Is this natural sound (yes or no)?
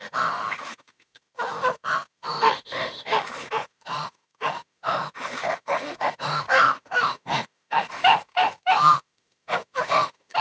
no